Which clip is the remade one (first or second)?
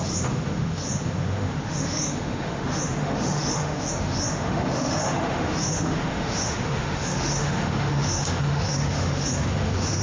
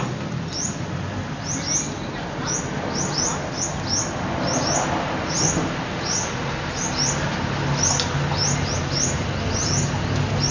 first